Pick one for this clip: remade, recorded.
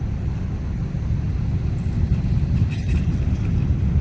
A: recorded